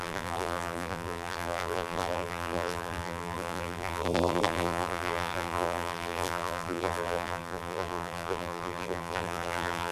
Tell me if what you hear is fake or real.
fake